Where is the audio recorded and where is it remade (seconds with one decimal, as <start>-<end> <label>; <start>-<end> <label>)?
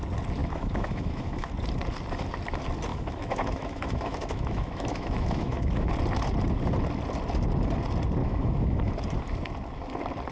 0.0-0.4 recorded; 0.4-1.5 remade; 1.5-2.9 recorded; 2.9-5.9 remade; 5.9-8.2 recorded; 8.2-8.9 remade; 8.9-10.3 recorded